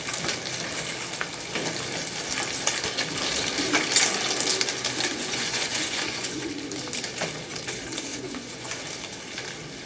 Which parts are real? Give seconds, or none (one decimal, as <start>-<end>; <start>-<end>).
0.0-5.1; 6.5-8.1; 8.8-9.8